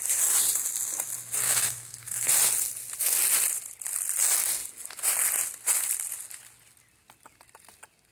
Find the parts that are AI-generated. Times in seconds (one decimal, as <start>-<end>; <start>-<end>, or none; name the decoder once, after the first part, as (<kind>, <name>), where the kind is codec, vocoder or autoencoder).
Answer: 1.4-2.3 (codec, SNAC)